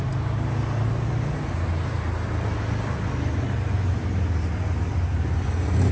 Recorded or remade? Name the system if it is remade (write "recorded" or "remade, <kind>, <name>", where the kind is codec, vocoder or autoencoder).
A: recorded